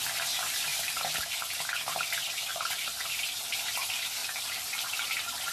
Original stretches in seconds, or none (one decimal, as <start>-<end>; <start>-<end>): 0.0-0.7; 1.4-2.5; 3.2-4.2; 4.9-5.5